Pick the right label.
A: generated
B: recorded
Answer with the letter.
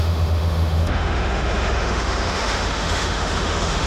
A